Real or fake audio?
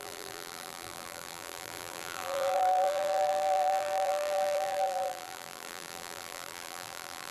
fake